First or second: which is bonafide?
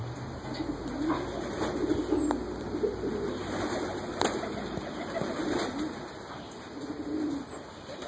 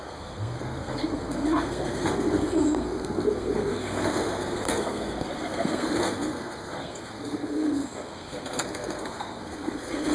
first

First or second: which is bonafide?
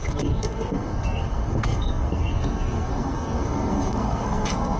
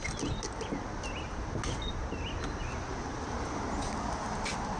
second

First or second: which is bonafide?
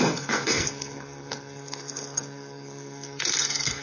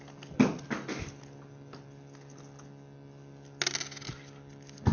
second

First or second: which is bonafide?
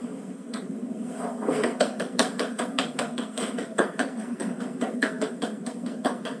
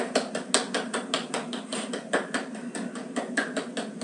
second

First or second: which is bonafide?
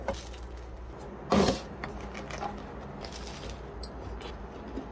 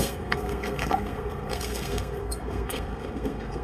first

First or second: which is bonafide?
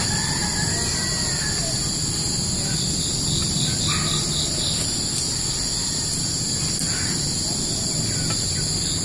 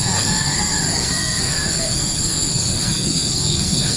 first